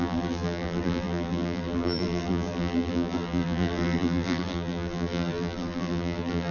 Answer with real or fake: fake